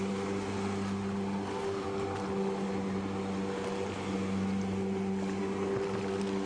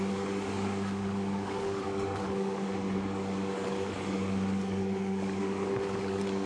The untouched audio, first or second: first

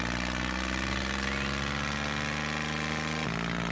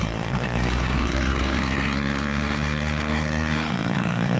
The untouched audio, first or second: first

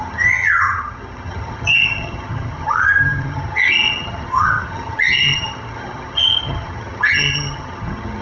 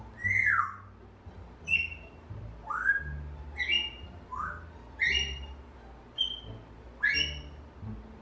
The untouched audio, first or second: second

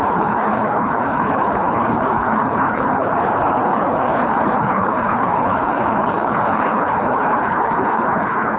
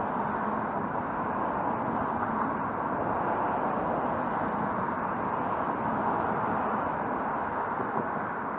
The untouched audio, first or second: second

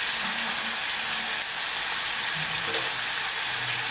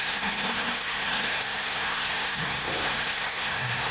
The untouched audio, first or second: first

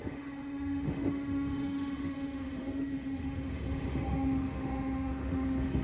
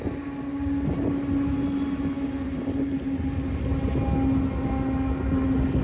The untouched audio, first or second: second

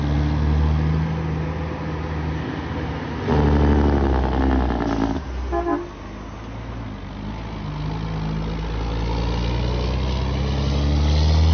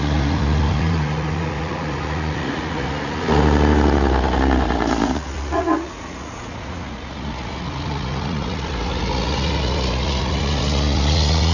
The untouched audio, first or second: first